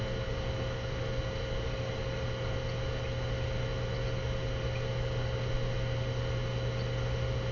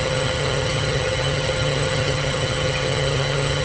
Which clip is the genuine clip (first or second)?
first